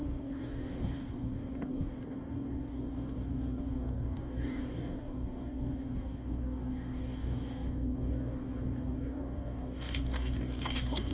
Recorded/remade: remade